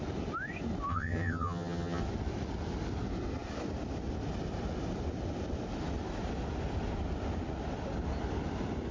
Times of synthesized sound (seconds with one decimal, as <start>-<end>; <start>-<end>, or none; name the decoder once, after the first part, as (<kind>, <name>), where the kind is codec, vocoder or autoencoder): 0.9-2.0 (vocoder, HiFi-GAN)